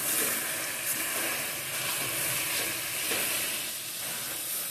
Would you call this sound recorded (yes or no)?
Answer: yes